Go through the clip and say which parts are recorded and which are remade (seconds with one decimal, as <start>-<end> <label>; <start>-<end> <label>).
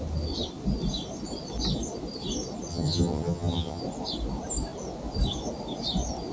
0.0-2.7 recorded; 2.7-3.8 remade; 3.8-6.3 recorded